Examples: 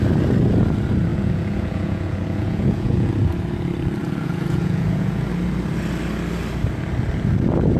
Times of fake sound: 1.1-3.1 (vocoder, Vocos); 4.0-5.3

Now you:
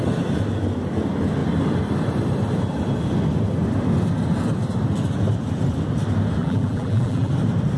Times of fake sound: 6.4-7.3 (vocoder, BigVGAN v2)

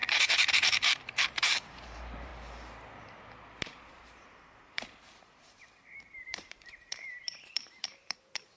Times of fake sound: 0.0-2.3 (vocoder, BigVGAN v2); 3.9-8.6

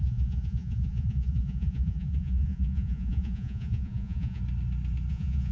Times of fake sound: 0.0-4.4 (vocoder, Vocos); 5.1-5.5

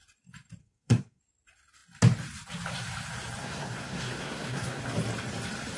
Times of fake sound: 0.6-1.2 (codec, SNAC); 3.4-4.8

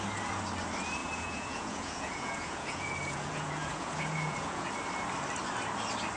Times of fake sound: 1.0-4.7 (vocoder, Vocos)

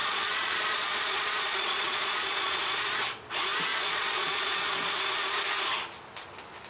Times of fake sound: 0.0-2.7 (vocoder, Vocos); 3.7-4.9

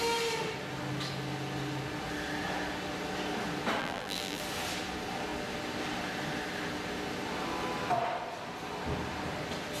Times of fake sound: 3.8-4.4 (vocoder, BigVGAN v2)